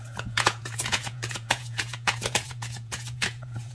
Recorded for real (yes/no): no